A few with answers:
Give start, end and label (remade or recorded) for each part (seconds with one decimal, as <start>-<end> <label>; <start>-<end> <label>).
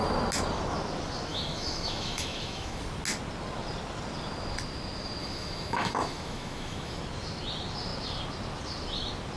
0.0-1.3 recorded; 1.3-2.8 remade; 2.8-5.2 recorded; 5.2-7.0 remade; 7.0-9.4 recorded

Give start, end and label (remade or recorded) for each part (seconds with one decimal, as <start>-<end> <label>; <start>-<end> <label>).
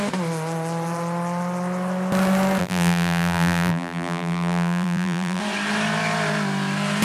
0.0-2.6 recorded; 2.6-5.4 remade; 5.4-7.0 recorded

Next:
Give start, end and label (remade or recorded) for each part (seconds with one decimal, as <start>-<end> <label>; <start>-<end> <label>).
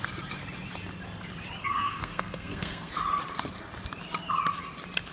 0.0-1.6 recorded; 1.6-2.9 remade; 2.9-5.1 recorded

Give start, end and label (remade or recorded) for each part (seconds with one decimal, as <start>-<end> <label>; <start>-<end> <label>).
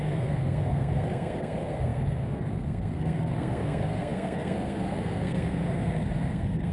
0.0-6.7 remade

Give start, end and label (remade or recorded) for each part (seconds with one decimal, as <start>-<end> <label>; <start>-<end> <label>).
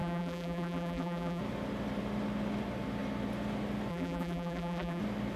0.0-1.4 remade; 1.4-3.9 recorded; 3.9-5.0 remade; 5.0-5.4 recorded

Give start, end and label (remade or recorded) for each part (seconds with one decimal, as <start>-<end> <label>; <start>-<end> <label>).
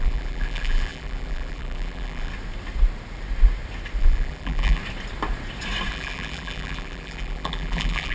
0.0-2.3 remade; 2.3-4.0 recorded; 4.0-4.8 remade; 4.8-5.9 recorded; 5.9-8.1 remade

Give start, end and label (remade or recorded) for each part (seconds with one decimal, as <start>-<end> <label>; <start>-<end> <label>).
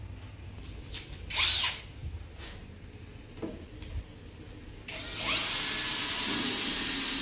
0.0-7.2 recorded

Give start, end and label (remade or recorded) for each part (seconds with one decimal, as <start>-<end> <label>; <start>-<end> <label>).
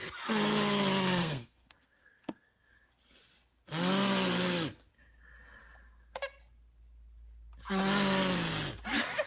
0.0-1.2 recorded; 1.2-2.6 remade; 2.6-9.3 recorded